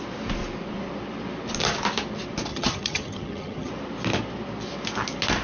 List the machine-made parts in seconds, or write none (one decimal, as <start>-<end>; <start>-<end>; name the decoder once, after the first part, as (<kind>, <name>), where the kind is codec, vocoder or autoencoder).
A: 2.5-3.7 (vocoder, HiFi-GAN)